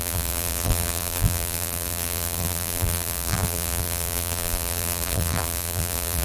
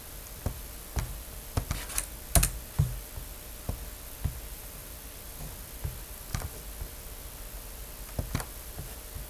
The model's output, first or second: first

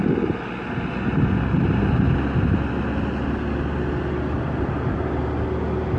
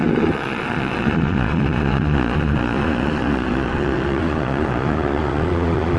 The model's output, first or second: second